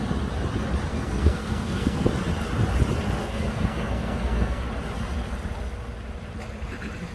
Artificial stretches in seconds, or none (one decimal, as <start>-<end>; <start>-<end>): 0.9-2.1; 3.2-4.6